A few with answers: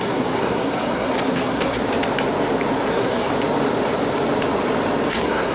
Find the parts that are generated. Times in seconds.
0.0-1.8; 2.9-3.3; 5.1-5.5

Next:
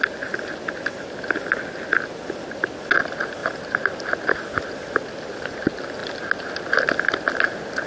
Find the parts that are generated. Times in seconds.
none

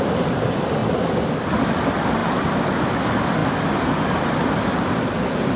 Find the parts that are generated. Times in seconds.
0.0-3.4; 3.9-5.6

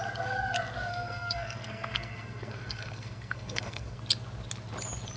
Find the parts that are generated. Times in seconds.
0.9-4.0

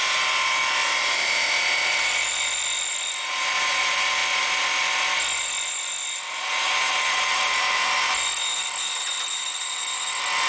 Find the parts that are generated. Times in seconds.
none

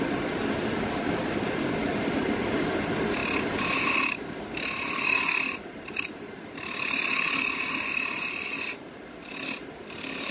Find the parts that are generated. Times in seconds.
none

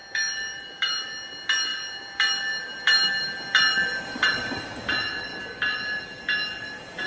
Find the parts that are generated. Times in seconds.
none

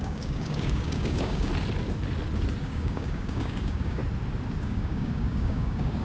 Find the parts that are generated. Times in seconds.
0.0-1.5; 2.6-4.0; 4.6-6.0